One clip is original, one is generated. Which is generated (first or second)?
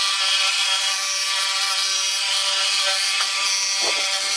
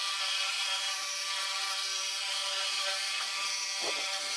second